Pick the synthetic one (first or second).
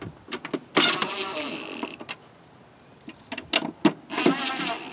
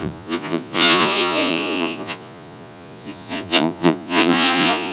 second